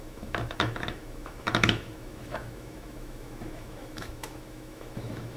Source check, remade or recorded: remade